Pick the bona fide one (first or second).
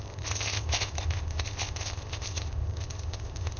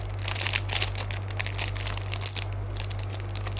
second